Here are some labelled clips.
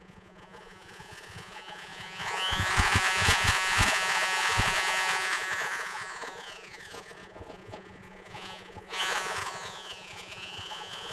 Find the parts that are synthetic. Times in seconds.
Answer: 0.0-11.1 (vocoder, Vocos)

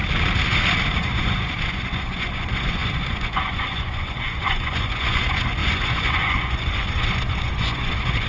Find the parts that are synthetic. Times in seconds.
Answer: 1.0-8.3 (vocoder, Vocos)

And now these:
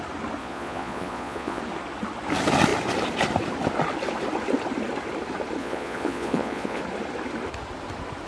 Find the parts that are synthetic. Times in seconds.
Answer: 0.4-1.6 (vocoder, Vocos); 5.6-6.8